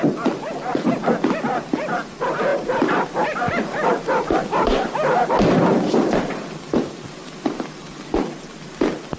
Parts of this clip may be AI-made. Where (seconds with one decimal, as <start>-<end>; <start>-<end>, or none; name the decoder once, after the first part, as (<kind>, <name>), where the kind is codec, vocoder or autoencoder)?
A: 0.7-1.9 (vocoder, BigVGAN v2); 2.5-4.9; 7.2-8.0